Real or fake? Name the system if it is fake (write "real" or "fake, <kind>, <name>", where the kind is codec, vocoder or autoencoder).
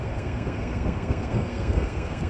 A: fake, codec, SNAC